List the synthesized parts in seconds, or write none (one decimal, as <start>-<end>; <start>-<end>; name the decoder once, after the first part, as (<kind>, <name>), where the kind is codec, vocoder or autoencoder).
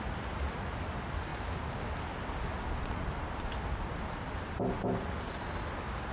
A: none